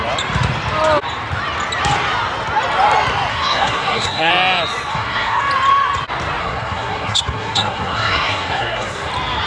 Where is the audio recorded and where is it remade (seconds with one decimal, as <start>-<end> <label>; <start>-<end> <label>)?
0.0-3.3 recorded; 3.3-4.3 remade; 4.3-4.9 recorded; 4.9-5.4 remade; 5.4-6.4 recorded; 6.4-9.1 remade; 9.1-9.5 recorded